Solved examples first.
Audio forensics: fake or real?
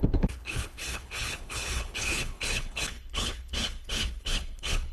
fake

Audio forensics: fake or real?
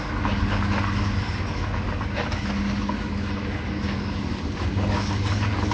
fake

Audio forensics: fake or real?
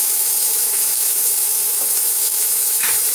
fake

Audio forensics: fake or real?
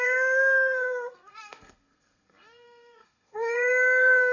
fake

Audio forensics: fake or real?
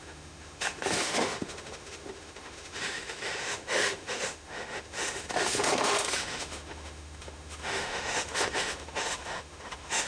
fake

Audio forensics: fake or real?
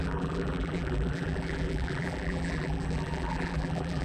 fake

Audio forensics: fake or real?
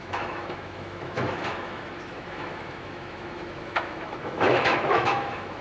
fake